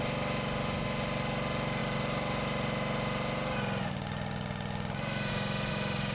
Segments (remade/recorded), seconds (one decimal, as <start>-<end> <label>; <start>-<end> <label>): 0.0-6.1 recorded

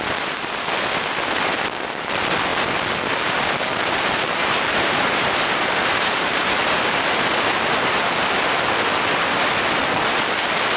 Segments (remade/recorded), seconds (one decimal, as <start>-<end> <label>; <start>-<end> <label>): 0.0-4.4 recorded; 4.4-8.0 remade; 8.0-10.8 recorded

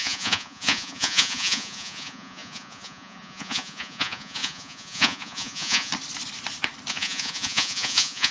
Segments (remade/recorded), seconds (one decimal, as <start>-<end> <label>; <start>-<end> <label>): 0.0-5.9 remade; 5.9-6.9 recorded; 6.9-8.3 remade

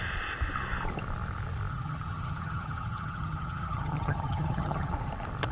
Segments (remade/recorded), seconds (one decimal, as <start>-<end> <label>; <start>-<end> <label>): 0.0-1.7 recorded; 1.7-4.9 remade; 4.9-5.5 recorded

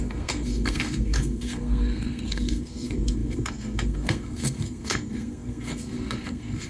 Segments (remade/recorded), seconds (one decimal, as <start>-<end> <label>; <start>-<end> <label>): 0.0-6.7 remade